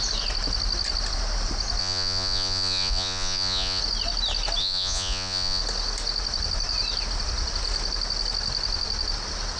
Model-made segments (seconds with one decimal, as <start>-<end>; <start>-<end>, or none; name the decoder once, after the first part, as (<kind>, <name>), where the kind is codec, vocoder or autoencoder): 1.8-3.8 (vocoder, Vocos); 4.6-5.6